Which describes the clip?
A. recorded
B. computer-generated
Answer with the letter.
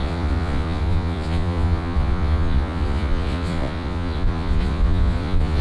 B